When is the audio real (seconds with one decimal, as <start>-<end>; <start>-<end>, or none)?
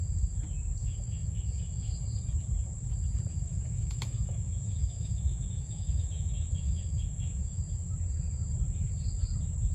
0.0-0.8; 1.9-3.3; 7.6-9.7